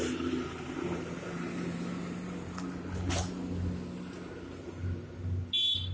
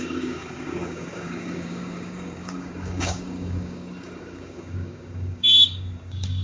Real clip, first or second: first